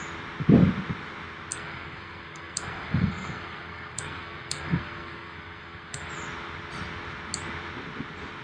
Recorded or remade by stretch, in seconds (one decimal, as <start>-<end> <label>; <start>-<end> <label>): 0.0-1.5 recorded; 1.5-6.1 remade; 6.1-8.4 recorded